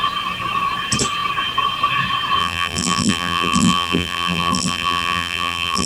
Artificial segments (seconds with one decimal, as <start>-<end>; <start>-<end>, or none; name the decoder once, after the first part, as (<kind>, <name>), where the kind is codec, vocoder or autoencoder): 2.4-5.9 (vocoder, BigVGAN v2)